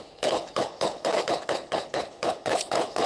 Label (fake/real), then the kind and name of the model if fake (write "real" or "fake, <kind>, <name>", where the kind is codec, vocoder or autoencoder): fake, codec, HILCodec